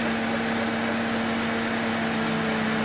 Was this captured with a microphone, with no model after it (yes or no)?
yes